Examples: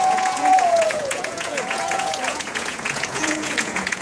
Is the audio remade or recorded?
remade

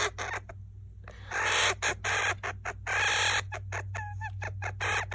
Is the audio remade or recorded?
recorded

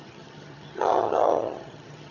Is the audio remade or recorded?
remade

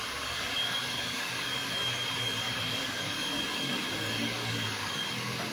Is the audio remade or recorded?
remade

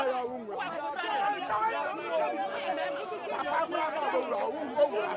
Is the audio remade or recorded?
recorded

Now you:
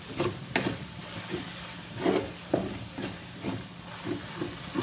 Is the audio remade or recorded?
recorded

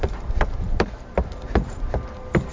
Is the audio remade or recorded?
remade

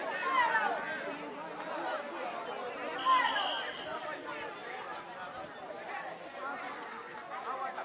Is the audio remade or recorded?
recorded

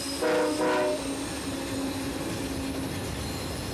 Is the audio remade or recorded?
recorded